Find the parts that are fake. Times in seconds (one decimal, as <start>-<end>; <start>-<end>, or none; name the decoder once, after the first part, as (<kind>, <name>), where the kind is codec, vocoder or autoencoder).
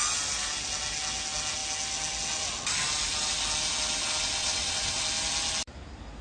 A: 4.4-5.0 (vocoder, WaveNeXt)